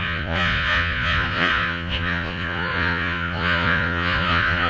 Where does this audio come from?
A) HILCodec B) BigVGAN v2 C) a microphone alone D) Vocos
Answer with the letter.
D